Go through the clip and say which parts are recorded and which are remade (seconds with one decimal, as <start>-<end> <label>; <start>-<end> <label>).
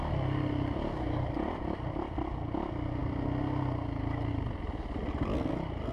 0.0-5.9 recorded